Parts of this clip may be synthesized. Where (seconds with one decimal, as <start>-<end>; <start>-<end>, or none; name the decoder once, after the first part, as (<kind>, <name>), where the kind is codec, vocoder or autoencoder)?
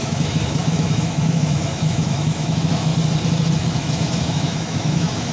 0.0-2.9 (autoencoder, DAC-VAE); 3.7-5.3